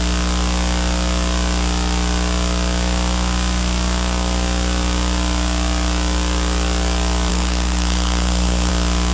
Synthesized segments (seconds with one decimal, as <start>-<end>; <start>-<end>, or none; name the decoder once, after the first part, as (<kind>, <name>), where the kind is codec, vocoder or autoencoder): 7.3-8.7 (codec, SNAC)